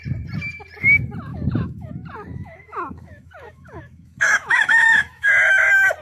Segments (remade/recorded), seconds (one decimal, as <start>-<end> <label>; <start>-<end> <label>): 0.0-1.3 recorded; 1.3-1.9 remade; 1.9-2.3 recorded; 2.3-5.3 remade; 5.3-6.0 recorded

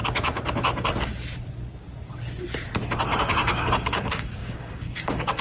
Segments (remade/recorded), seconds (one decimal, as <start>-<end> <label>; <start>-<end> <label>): 0.0-3.2 recorded; 3.2-5.4 remade

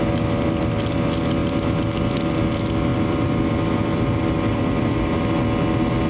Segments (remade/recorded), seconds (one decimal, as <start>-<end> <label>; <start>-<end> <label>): 0.0-2.9 recorded; 2.9-3.4 remade; 3.4-3.8 recorded; 3.8-4.9 remade; 4.9-6.1 recorded